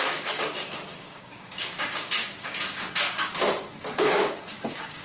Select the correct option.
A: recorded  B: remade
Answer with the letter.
B